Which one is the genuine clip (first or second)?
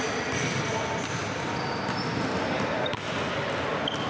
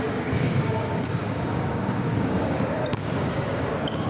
first